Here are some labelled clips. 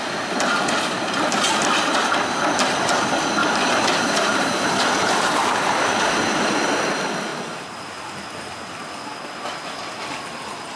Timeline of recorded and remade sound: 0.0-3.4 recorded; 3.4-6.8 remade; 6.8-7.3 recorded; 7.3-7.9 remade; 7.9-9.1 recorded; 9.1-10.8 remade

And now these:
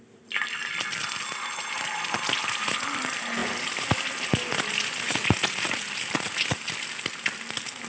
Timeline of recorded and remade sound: 0.0-3.4 recorded; 3.4-4.1 remade; 4.1-7.9 recorded

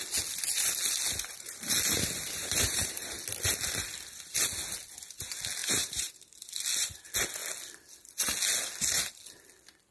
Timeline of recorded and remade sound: 0.0-2.4 recorded; 2.4-3.1 remade; 3.1-5.6 recorded; 5.6-6.5 remade; 6.5-9.9 recorded

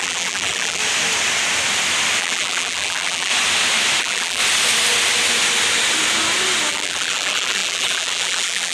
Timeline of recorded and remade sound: 0.0-0.8 remade; 0.8-2.2 recorded; 2.2-3.3 remade; 3.3-4.0 recorded; 4.0-4.4 remade; 4.4-6.7 recorded; 6.7-8.7 remade

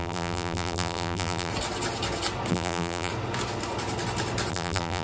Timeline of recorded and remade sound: 0.0-1.5 remade; 1.5-2.5 recorded; 2.5-3.1 remade; 3.1-4.5 recorded; 4.5-5.0 remade

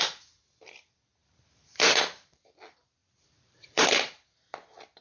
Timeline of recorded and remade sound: 0.0-1.2 recorded; 1.2-2.5 remade; 2.5-3.0 recorded; 3.0-3.9 remade; 3.9-5.0 recorded